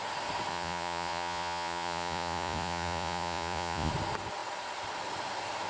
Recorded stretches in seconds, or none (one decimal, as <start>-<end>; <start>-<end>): 0.0-0.5; 3.9-5.7